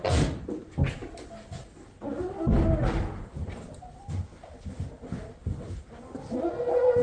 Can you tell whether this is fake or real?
real